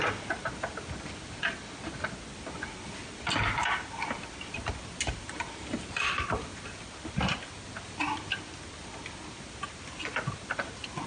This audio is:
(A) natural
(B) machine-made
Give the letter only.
A